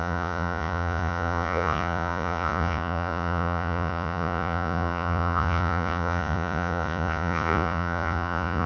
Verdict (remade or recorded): remade